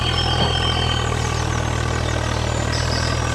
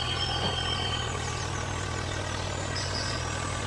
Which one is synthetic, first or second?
second